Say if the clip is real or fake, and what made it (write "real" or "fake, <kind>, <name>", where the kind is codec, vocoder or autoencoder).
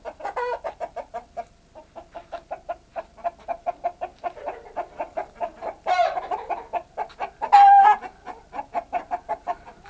fake, vocoder, BigVGAN v2